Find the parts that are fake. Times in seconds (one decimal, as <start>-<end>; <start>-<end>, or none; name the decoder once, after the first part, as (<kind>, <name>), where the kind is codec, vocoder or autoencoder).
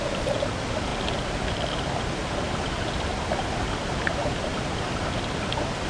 none